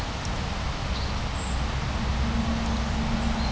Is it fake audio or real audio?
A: real